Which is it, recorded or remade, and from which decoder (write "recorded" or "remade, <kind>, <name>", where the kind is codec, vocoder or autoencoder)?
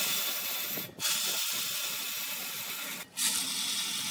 recorded